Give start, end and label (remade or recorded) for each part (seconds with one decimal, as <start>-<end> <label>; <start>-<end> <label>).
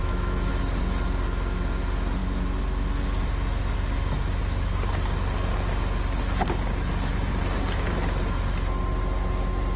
0.0-0.5 remade; 0.5-9.8 recorded